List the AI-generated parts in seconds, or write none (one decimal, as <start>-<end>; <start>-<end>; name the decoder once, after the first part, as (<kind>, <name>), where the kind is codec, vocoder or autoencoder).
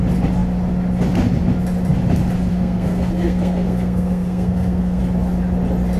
2.5-5.0 (codec, SNAC)